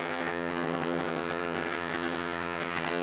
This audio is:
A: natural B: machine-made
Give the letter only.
B